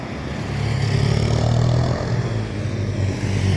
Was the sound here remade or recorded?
recorded